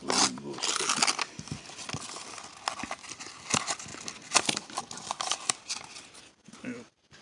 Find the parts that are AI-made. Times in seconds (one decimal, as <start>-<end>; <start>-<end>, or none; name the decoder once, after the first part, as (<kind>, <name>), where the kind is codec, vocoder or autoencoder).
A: 3.9-4.8 (vocoder, BigVGAN v2); 5.3-6.6